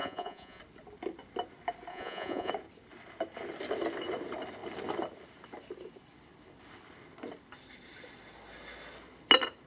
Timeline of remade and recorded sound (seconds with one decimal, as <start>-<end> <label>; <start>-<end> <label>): 0.0-0.6 remade; 0.6-1.9 recorded; 1.9-2.5 remade; 2.5-9.7 recorded